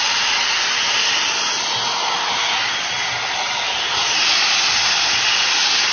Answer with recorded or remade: recorded